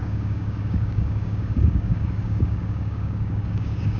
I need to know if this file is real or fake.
fake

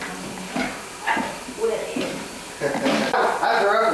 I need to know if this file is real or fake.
real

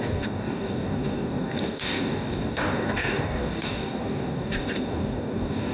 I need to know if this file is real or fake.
fake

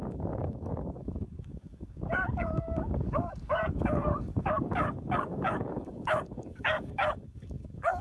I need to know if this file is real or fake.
fake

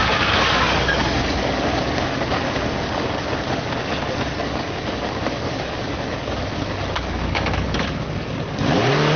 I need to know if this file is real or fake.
fake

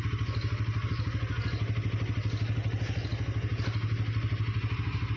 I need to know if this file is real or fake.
real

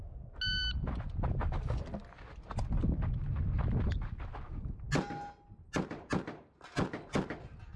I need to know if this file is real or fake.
real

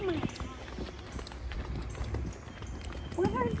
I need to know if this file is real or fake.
real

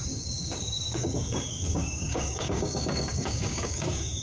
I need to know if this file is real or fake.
fake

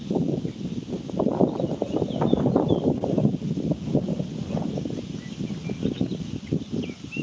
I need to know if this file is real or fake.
real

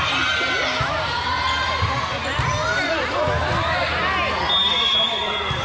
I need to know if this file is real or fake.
real